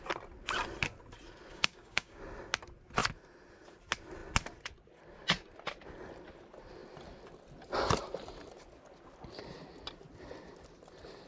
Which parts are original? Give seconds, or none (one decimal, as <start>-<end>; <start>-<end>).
0.0-1.5; 2.2-11.3